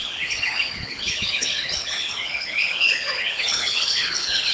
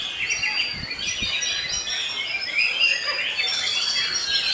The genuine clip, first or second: second